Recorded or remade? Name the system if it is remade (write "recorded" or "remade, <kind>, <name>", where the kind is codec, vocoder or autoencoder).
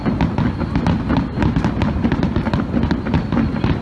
recorded